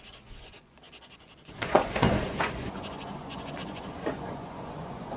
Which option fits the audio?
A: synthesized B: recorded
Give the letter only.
A